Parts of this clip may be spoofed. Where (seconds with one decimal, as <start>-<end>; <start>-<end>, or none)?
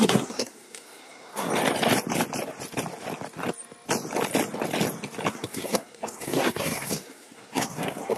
0.0-1.5; 5.3-8.2